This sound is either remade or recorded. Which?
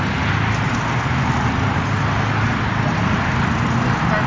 recorded